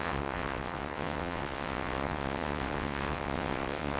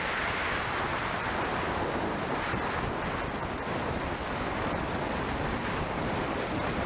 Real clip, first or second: second